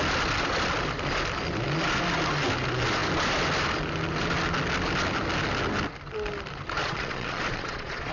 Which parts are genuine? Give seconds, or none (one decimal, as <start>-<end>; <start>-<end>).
0.0-6.8